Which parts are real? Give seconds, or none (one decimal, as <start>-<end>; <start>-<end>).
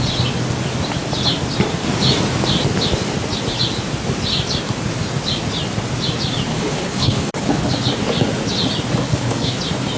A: 0.0-6.5; 7.7-9.0; 9.6-10.0